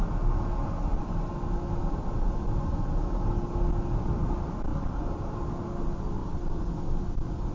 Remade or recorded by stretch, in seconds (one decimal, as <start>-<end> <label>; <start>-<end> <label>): 0.0-7.5 recorded